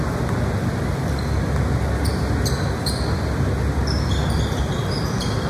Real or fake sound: real